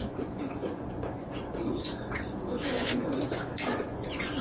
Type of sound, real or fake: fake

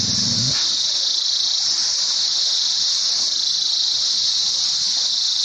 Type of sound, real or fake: real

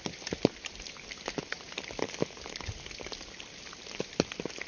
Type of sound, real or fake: real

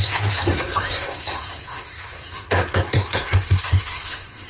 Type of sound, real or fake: fake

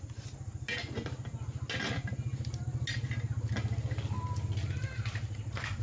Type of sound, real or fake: real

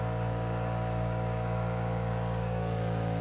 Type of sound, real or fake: fake